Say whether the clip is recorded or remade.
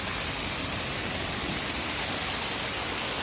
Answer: recorded